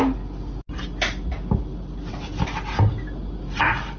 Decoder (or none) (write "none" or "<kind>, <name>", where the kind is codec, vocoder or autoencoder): none